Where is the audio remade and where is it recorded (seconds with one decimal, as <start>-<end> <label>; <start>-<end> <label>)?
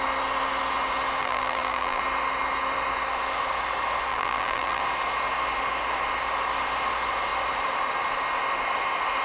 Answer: 0.0-1.2 recorded; 1.2-2.0 remade; 2.0-4.1 recorded; 4.1-4.8 remade; 4.8-9.2 recorded